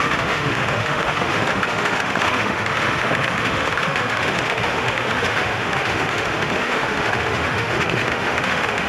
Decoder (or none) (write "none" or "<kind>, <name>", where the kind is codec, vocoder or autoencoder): autoencoder, DAC-VAE